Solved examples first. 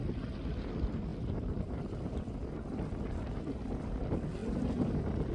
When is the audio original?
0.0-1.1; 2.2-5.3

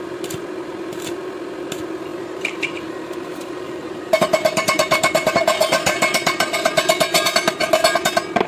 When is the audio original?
0.0-2.1; 6.7-8.5

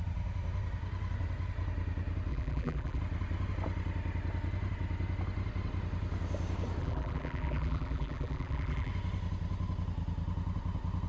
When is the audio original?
0.0-2.3; 3.0-6.8; 8.9-11.1

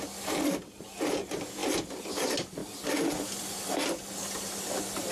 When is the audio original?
0.0-5.1

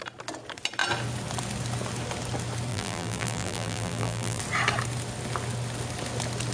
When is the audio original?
0.0-2.7; 4.4-6.5

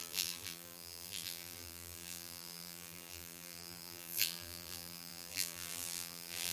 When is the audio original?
none